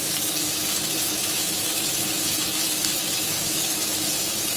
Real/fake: fake